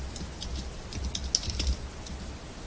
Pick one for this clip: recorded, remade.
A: recorded